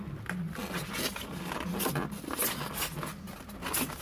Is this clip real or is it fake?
real